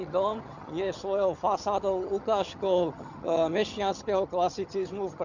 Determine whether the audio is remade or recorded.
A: remade